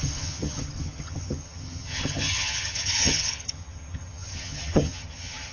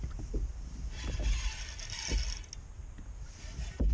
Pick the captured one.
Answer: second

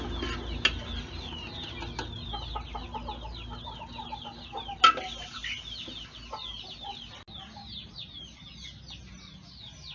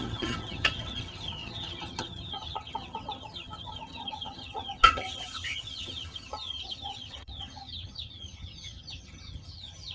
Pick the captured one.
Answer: first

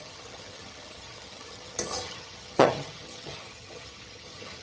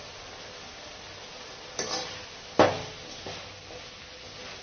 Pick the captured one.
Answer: second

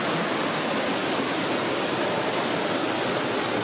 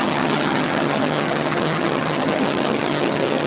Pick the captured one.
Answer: first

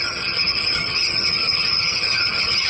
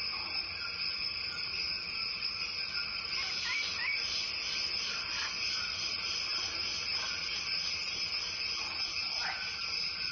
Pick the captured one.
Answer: second